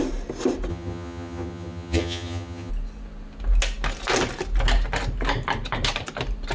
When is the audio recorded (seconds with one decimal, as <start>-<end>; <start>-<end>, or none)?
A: 0.0-0.7; 2.7-6.5